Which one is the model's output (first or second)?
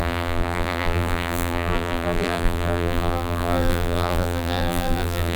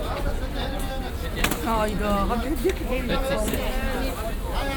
first